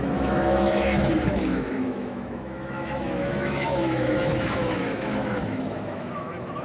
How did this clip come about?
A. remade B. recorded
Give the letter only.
A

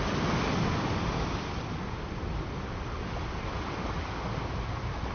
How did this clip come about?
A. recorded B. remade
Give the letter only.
A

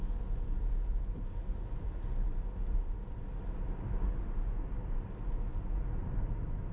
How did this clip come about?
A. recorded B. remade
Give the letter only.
A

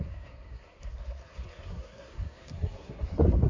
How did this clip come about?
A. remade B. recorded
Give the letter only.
A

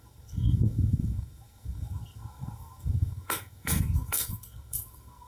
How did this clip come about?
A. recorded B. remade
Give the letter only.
B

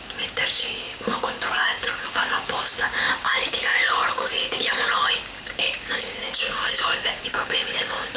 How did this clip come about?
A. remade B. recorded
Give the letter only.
A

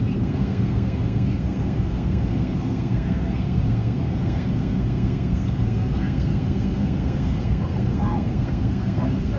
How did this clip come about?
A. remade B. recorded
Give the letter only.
A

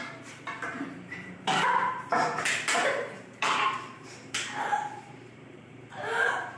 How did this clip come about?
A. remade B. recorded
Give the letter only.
A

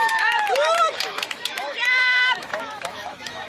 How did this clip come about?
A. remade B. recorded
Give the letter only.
A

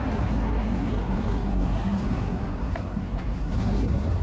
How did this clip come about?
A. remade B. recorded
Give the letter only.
A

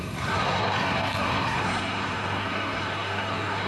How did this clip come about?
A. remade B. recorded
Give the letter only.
A